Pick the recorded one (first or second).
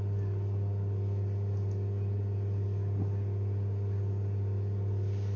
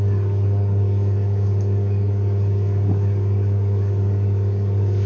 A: first